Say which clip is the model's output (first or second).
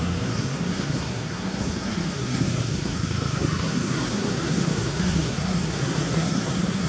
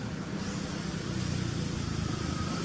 first